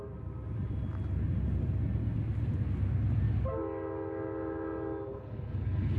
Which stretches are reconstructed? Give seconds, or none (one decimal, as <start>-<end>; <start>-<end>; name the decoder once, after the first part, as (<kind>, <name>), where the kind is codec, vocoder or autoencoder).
5.1-6.0 (codec, HILCodec)